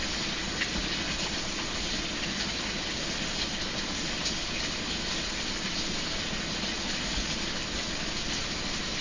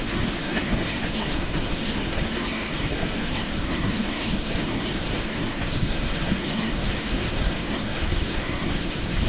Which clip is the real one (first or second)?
first